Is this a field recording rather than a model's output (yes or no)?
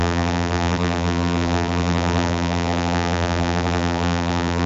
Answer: no